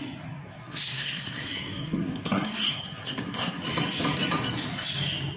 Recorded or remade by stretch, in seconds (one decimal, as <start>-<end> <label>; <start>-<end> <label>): 0.0-0.4 recorded; 0.4-3.6 remade; 3.6-5.4 recorded